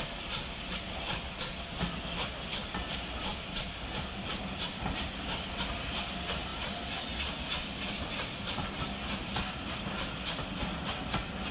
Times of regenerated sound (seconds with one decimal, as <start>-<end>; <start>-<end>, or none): none